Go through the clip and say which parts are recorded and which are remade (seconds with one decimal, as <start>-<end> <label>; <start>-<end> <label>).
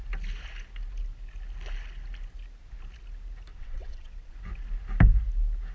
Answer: 0.0-3.5 recorded; 3.5-4.3 remade; 4.3-5.7 recorded